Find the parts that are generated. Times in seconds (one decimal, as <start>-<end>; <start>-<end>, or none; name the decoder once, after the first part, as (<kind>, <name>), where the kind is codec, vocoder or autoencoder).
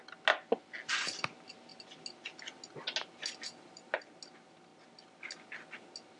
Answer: none